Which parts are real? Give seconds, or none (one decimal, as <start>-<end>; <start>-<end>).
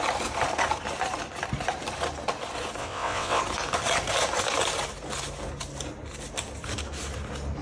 0.0-2.8; 3.4-7.6